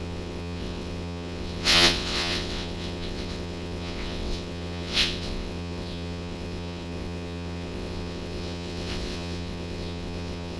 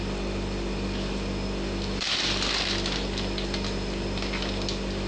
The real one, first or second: second